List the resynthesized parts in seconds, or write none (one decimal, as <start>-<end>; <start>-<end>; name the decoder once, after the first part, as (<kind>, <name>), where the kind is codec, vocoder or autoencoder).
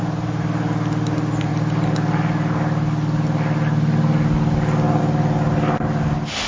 none